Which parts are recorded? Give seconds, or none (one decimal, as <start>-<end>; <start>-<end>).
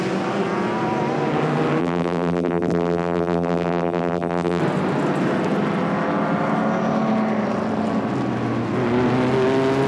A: 0.0-1.8; 4.6-9.9